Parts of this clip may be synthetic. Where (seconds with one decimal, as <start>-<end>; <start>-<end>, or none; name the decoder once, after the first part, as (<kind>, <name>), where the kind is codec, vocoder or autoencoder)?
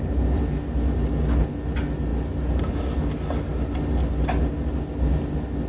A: none